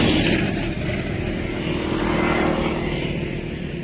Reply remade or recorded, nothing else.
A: recorded